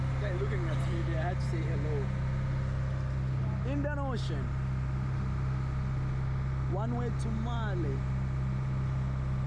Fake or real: real